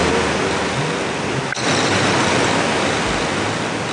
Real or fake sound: real